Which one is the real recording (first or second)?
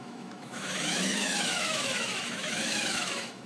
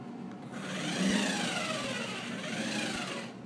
second